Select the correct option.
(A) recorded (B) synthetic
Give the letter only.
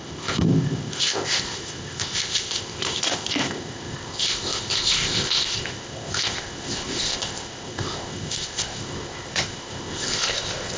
B